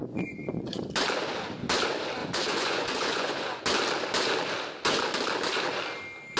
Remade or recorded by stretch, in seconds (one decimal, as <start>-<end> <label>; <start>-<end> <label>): 0.0-0.8 remade; 0.8-2.2 recorded; 2.2-3.6 remade; 3.6-6.4 recorded